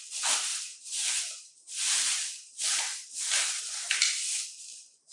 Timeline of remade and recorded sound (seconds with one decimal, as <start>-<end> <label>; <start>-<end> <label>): 0.0-0.5 recorded; 0.5-3.6 remade; 3.6-5.1 recorded